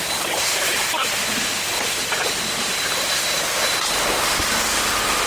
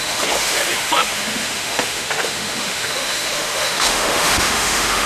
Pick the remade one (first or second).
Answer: second